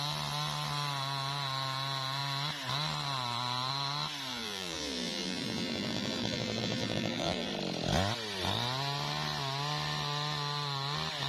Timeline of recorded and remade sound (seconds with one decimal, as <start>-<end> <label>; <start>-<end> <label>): 0.0-4.3 recorded; 4.3-7.5 remade; 7.5-11.3 recorded